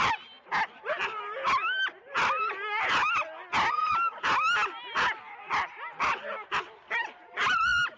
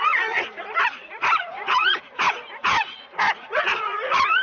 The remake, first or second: second